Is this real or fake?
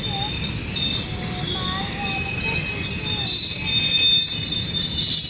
real